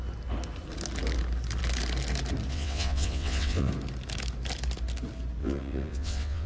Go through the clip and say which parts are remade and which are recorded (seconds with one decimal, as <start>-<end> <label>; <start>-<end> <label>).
0.0-2.5 recorded; 2.5-3.7 remade; 3.7-5.4 recorded; 5.4-6.5 remade